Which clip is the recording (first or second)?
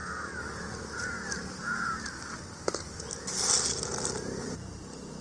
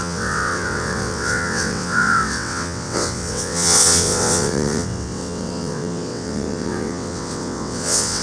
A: first